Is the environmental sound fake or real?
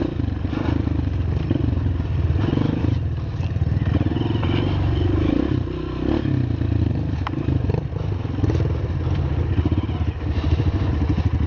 real